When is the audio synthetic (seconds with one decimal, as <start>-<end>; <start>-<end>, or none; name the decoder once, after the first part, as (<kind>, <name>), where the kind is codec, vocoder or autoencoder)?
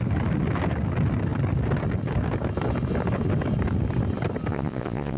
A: 4.5-5.2 (vocoder, Vocos)